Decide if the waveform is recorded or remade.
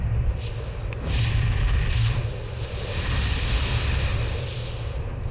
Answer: recorded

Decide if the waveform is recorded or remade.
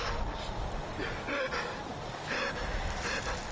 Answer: recorded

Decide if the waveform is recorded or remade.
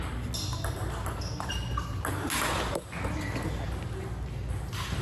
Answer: recorded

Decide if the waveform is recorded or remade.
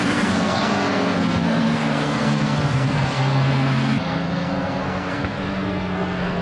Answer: remade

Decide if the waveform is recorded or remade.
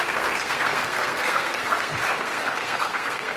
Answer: remade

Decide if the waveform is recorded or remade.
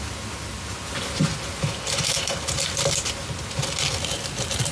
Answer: recorded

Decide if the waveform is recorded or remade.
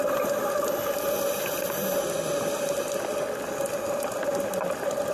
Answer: recorded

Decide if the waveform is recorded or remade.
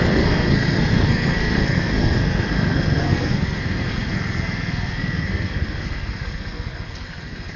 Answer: remade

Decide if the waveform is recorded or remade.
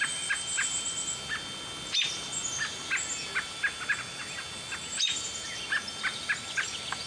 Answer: recorded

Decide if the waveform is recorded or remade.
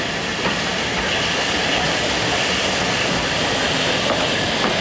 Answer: recorded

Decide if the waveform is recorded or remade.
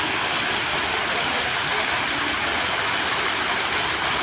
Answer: recorded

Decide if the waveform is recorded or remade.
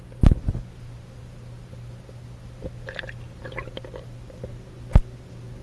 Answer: recorded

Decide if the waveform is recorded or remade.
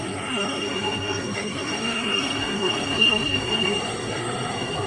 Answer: remade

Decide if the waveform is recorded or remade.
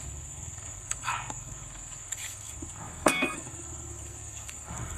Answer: remade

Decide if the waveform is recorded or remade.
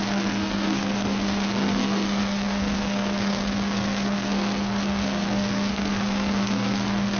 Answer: remade